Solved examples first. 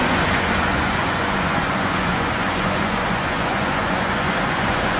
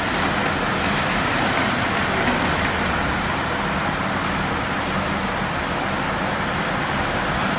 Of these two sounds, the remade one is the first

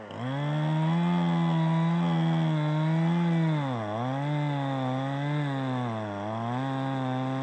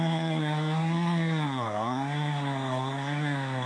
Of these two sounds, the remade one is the second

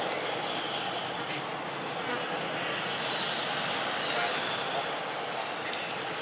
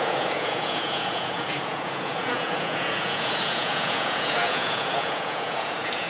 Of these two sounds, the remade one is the second